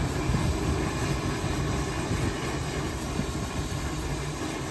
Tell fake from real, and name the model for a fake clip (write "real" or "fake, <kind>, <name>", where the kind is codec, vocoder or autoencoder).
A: real